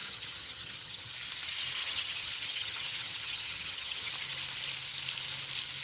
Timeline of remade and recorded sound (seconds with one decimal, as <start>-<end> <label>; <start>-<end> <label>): 0.0-1.1 remade; 1.1-1.8 recorded; 1.8-4.1 remade; 4.1-5.8 recorded